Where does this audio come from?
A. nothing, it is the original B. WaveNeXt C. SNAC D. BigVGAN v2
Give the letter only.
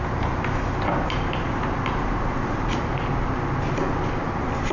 A